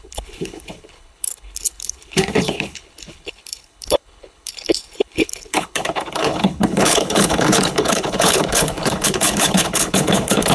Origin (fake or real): fake